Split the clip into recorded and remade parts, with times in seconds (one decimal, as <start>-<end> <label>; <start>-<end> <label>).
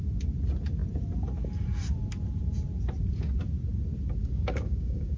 0.0-4.2 recorded; 4.2-5.2 remade